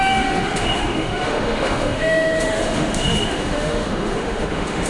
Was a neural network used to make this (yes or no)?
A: yes